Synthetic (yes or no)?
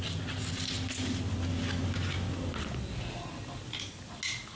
no